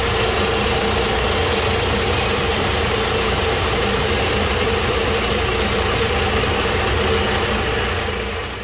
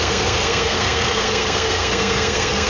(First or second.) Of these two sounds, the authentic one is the first